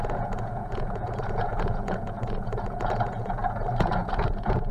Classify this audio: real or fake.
fake